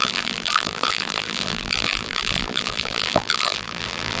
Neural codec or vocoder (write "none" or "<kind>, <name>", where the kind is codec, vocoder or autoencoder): vocoder, BigVGAN v2